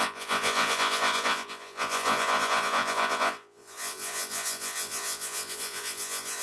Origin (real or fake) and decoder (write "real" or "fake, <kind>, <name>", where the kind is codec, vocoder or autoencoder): fake, vocoder, Vocos